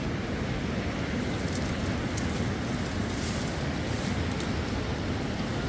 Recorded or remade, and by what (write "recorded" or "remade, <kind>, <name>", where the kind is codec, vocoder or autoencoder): recorded